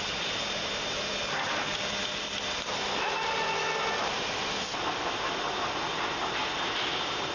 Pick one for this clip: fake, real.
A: real